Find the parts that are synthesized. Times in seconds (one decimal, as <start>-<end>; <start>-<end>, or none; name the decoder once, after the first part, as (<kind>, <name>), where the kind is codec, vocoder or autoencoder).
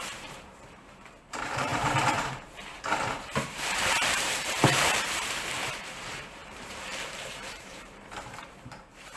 0.0-9.2 (vocoder, BigVGAN v2)